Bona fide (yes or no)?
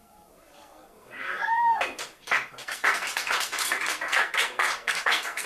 no